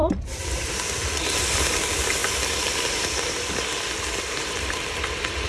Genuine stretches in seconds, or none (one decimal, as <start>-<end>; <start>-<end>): 0.7-5.5